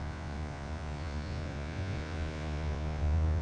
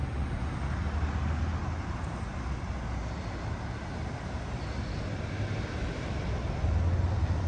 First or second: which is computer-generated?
first